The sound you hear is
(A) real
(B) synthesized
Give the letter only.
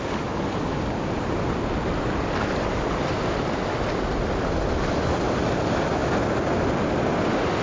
A